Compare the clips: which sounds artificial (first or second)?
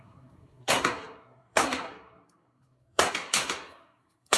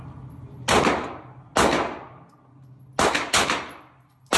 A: first